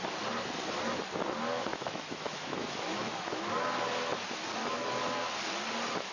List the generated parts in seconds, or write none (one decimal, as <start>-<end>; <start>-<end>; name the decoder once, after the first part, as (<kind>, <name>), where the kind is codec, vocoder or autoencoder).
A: 1.7-3.5 (autoencoder, DAC-VAE); 4.6-5.1